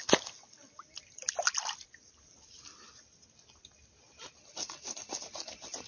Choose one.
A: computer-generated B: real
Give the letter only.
B